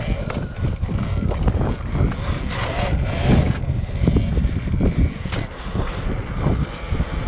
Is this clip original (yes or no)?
yes